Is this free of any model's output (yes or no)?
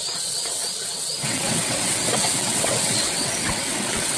no